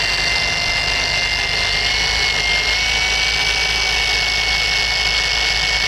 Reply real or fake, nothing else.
real